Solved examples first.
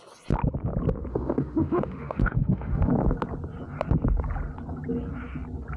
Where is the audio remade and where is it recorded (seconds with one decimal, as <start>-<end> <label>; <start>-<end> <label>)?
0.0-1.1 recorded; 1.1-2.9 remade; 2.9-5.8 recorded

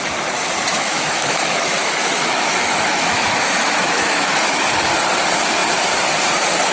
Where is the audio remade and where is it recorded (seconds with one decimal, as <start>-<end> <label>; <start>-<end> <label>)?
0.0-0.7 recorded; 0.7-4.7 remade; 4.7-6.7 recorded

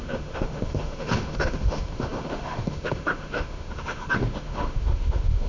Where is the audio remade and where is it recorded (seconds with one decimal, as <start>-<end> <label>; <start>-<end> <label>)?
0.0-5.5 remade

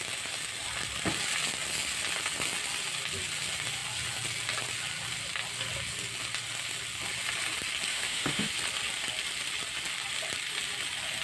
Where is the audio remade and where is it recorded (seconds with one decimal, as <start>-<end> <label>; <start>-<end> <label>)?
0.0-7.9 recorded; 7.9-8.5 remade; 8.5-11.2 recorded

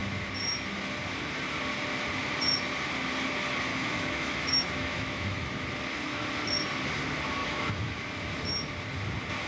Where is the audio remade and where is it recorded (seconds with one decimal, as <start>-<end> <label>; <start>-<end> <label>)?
0.0-3.7 recorded; 3.7-5.7 remade; 5.7-7.4 recorded; 7.4-8.0 remade; 8.0-9.5 recorded